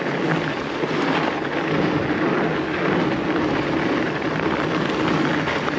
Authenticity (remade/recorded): recorded